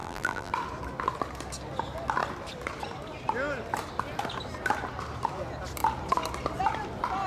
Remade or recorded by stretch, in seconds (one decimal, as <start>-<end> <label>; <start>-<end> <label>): 0.0-0.5 remade; 0.5-7.3 recorded